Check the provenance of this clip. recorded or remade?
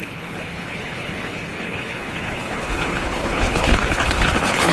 remade